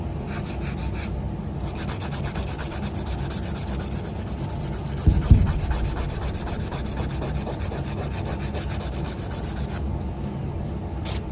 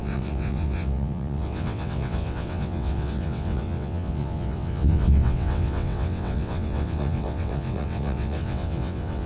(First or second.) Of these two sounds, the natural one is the first